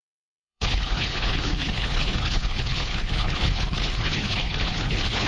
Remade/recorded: remade